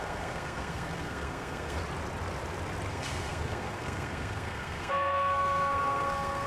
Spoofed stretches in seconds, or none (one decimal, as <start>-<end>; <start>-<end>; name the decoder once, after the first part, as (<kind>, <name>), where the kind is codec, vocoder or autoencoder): 0.0-1.8 (codec, SNAC); 2.9-6.5